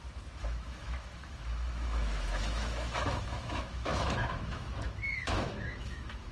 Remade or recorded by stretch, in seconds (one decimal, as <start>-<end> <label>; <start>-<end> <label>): 0.0-6.3 remade